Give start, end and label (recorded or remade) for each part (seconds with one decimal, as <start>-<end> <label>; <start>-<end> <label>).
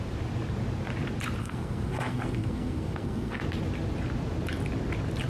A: 0.0-1.4 recorded; 1.4-3.4 remade; 3.4-5.3 recorded